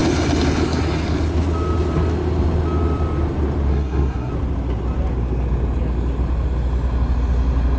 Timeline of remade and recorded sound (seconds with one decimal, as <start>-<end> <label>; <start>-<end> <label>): 0.0-3.7 recorded; 3.7-4.3 remade; 4.3-7.8 recorded